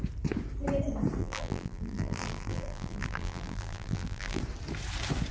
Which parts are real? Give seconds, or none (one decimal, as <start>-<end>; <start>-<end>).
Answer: 0.0-1.2; 4.4-5.3